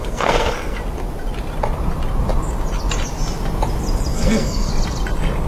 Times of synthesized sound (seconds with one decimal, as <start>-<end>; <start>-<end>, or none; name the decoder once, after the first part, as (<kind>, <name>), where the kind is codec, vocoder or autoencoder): 0.0-0.8 (codec, SNAC); 4.1-4.7